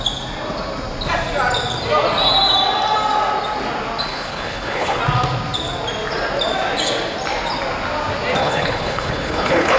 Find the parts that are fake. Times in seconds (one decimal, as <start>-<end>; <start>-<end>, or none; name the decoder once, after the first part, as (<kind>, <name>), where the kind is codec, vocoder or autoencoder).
4.1-5.0 (codec, HILCodec); 8.4-9.8